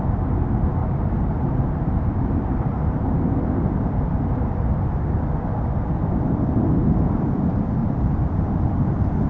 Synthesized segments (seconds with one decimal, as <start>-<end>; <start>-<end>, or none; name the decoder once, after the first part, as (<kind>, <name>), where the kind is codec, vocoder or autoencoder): 0.8-5.2 (vocoder, BigVGAN v2); 7.8-8.5